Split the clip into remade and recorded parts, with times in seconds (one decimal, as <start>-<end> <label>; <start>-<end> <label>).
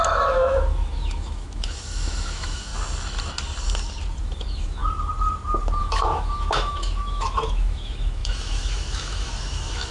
0.0-2.7 remade; 2.7-4.2 recorded; 4.2-4.8 remade; 4.8-5.8 recorded; 5.8-9.9 remade